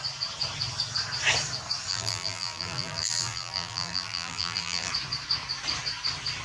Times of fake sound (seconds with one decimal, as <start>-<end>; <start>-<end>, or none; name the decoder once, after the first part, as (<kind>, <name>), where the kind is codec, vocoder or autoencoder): 1.9-4.9 (vocoder, BigVGAN v2)